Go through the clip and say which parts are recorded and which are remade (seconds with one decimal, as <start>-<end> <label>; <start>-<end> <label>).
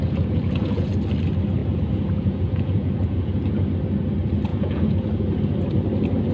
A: 0.0-0.9 remade; 0.9-1.6 recorded; 1.6-3.7 remade; 3.7-4.5 recorded; 4.5-5.4 remade; 5.4-6.3 recorded